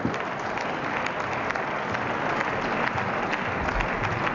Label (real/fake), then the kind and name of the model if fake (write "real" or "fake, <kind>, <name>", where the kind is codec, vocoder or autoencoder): real